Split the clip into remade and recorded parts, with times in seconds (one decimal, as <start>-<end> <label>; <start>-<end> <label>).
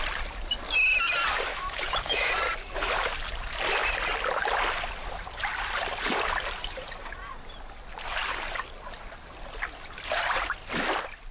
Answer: 0.0-1.5 recorded; 1.5-2.3 remade; 2.3-11.3 recorded